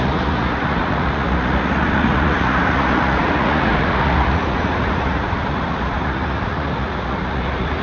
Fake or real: fake